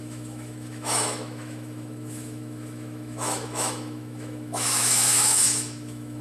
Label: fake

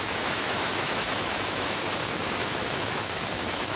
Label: fake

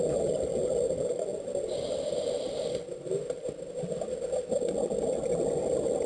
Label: real